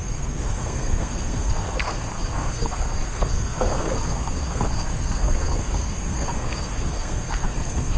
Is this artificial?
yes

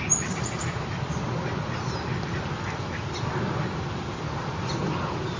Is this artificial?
no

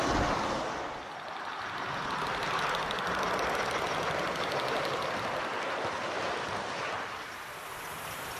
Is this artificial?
no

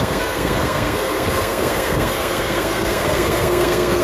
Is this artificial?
yes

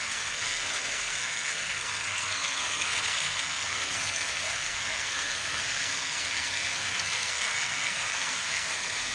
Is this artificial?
yes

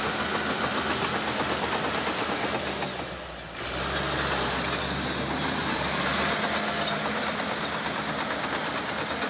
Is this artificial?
no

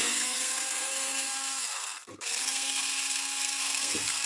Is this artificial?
yes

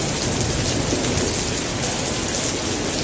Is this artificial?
no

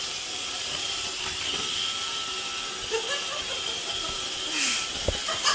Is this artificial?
no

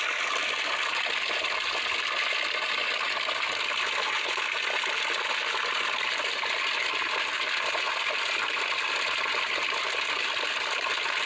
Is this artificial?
no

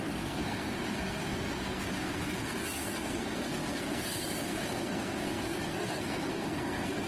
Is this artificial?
yes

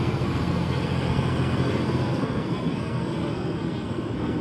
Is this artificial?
yes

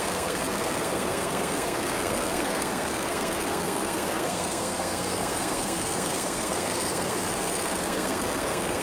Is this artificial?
yes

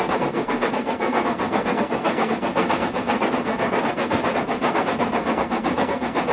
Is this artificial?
yes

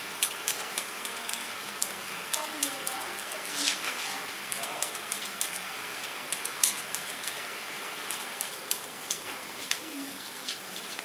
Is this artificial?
yes